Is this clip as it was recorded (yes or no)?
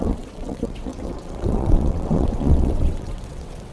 no